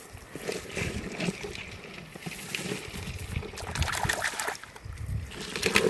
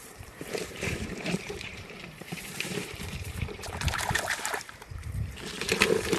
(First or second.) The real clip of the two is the first